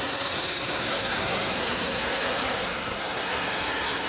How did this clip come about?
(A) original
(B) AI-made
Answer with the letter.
B